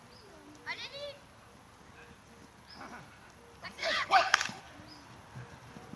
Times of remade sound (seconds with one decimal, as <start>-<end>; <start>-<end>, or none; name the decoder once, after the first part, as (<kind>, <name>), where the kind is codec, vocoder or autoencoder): 3.8-4.6 (codec, HILCodec)

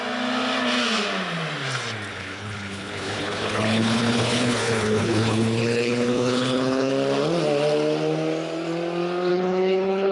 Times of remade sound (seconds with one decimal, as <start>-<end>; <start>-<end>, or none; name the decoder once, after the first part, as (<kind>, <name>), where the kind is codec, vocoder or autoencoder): 2.1-6.9 (codec, HILCodec); 9.3-10.1

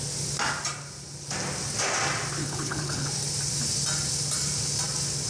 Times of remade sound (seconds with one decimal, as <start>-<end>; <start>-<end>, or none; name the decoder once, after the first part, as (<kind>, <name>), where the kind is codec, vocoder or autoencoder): 2.4-3.1 (codec, HILCodec)

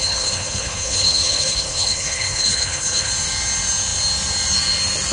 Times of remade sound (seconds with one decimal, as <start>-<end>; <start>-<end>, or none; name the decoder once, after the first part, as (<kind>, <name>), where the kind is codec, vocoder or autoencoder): 0.0-3.1 (codec, HILCodec)

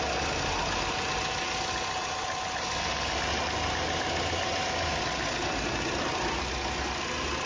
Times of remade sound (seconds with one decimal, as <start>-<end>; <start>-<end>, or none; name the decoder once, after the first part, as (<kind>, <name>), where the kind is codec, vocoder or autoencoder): none

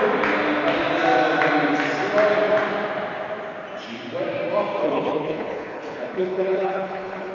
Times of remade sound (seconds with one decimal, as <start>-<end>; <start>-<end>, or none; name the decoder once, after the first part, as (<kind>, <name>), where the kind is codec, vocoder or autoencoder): 4.8-7.3 (codec, HILCodec)

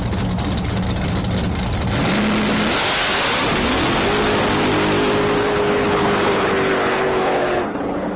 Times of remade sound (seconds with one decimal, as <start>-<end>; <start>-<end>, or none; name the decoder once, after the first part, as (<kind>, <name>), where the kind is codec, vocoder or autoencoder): 5.4-8.2 (codec, HILCodec)